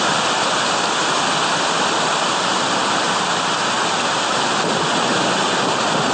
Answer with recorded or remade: recorded